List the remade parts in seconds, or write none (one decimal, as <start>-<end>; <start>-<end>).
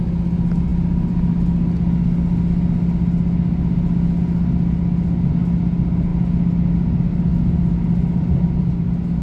none